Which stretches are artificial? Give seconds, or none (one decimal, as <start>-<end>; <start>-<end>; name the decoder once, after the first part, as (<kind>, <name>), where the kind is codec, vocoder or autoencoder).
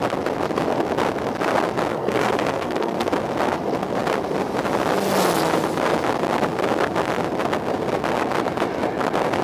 1.9-3.1 (codec, SNAC)